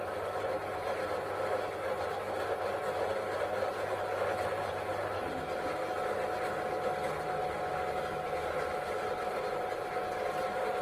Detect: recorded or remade recorded